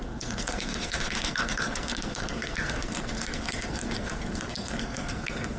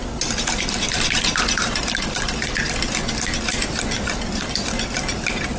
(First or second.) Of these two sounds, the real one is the second